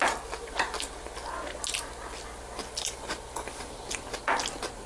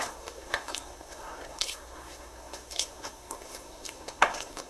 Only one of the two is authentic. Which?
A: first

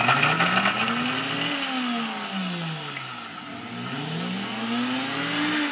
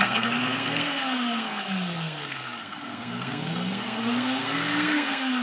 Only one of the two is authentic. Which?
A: first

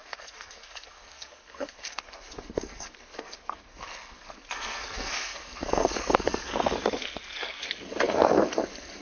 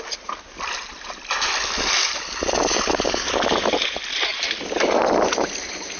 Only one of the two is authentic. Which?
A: second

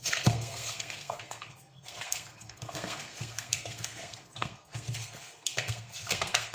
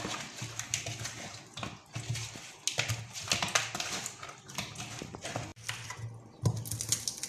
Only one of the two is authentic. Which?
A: second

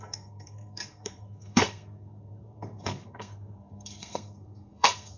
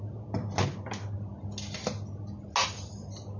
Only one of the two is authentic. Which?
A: second